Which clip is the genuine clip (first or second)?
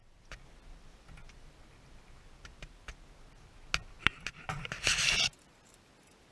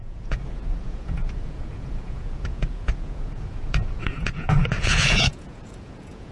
first